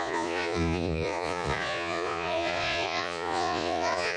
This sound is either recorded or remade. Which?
remade